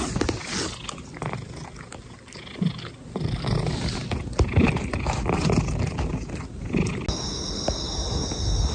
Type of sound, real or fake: real